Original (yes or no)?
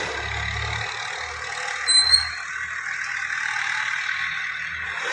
yes